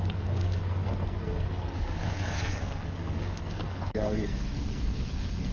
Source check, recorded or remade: remade